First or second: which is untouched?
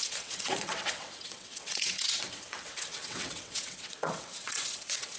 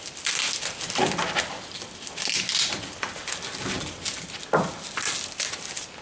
second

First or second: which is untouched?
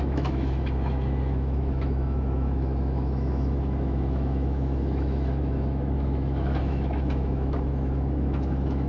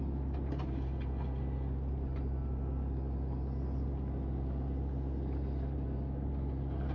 second